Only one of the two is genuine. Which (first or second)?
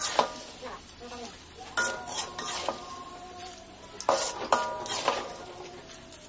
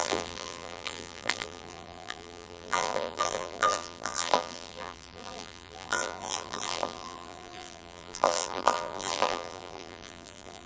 first